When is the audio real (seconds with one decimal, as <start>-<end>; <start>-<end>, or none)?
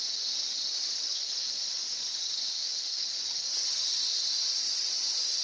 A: 0.0-5.4